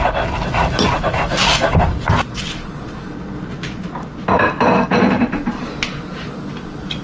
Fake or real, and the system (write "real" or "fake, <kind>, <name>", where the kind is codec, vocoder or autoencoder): real